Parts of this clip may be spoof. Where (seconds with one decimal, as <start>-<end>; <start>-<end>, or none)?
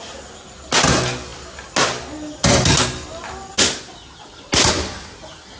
none